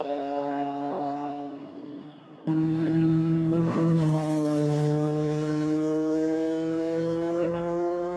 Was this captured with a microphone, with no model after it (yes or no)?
no